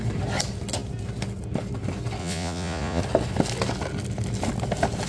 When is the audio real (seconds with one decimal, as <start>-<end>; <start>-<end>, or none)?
0.0-2.2; 3.0-5.1